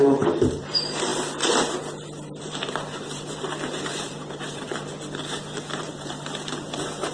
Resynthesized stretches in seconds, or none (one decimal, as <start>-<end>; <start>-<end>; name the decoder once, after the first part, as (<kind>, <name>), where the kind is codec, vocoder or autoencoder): 0.0-1.1 (vocoder, BigVGAN v2); 2.4-4.7; 5.8-7.1